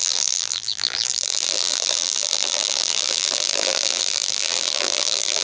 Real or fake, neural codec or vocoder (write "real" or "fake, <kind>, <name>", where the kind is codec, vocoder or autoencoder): fake, vocoder, BigVGAN v2